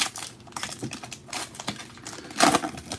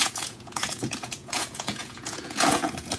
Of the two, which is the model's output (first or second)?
second